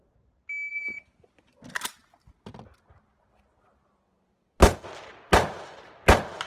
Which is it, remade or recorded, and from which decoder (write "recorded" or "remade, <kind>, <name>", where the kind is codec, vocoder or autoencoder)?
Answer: recorded